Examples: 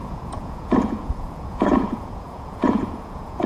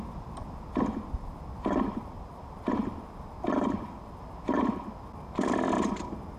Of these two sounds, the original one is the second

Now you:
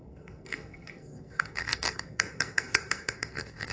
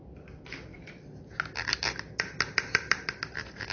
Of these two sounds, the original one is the second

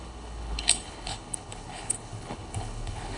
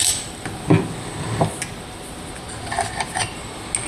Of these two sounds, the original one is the second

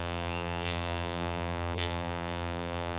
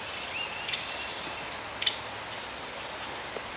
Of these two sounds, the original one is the second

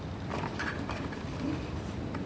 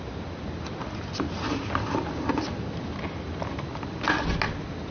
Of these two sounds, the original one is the second